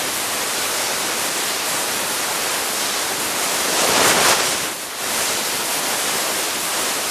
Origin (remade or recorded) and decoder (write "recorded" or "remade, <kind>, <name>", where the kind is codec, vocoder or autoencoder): remade, vocoder, BigVGAN v2